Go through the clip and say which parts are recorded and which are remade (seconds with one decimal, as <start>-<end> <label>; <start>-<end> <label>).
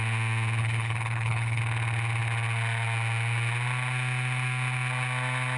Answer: 0.0-0.6 recorded; 0.6-1.6 remade; 1.6-5.6 recorded